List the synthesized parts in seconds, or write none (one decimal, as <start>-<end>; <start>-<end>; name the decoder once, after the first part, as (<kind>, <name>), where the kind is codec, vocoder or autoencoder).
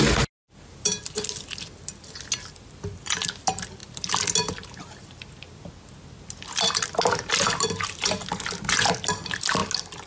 none